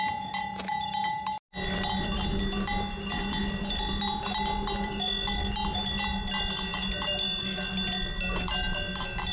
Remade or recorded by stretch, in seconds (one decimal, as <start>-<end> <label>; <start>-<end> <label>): 0.0-9.3 recorded